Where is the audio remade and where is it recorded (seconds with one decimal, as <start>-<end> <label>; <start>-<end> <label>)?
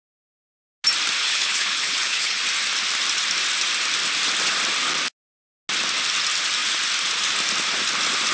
0.0-1.2 recorded; 1.2-2.4 remade; 2.4-8.3 recorded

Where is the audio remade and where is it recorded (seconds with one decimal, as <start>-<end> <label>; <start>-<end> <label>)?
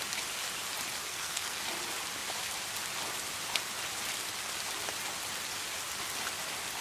0.0-1.0 recorded; 1.0-1.6 remade; 1.6-6.8 recorded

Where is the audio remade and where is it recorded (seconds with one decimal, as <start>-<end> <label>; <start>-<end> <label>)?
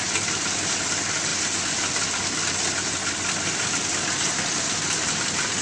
0.0-5.6 recorded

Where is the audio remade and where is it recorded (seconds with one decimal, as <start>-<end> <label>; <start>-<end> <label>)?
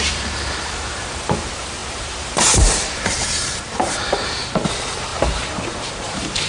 0.0-6.5 remade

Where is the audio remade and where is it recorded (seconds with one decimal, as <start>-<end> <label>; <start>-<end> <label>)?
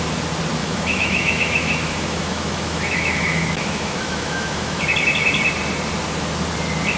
0.0-0.6 recorded; 0.6-4.8 remade; 4.8-7.0 recorded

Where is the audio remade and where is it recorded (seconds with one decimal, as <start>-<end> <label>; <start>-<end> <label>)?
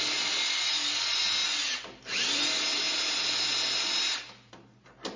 0.0-5.2 recorded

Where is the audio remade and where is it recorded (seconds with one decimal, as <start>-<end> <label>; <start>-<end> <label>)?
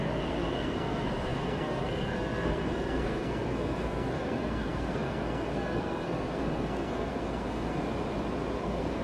0.0-7.8 remade; 7.8-8.6 recorded; 8.6-9.0 remade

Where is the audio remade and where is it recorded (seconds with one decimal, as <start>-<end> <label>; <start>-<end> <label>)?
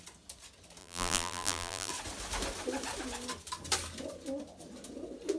0.0-0.8 recorded; 0.8-1.9 remade; 1.9-5.4 recorded